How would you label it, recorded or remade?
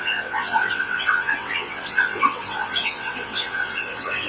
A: remade